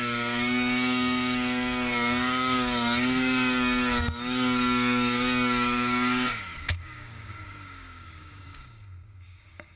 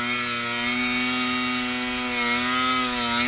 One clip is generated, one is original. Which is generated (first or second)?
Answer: first